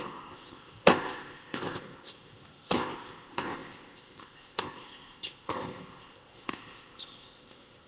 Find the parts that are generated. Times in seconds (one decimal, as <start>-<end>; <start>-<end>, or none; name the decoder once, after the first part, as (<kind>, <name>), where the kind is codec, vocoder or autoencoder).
0.0-7.9 (codec, ZipCodec)